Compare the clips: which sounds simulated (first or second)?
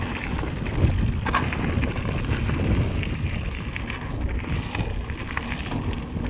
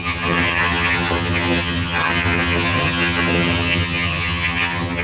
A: second